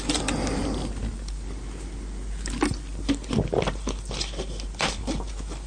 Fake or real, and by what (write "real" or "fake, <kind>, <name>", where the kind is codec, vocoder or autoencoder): real